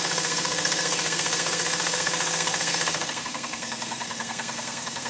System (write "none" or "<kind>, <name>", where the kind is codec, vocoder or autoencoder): codec, SNAC